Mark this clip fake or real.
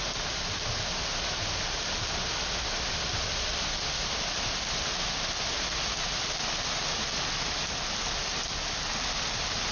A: real